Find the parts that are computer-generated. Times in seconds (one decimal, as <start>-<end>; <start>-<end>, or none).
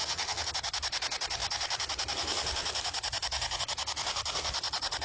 0.0-0.5